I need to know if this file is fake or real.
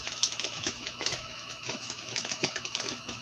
fake